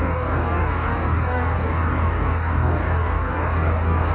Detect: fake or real fake